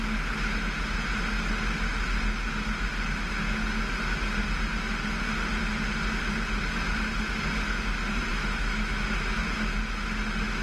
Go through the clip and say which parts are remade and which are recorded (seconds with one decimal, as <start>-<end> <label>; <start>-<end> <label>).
0.0-8.3 recorded; 8.3-9.1 remade; 9.1-10.6 recorded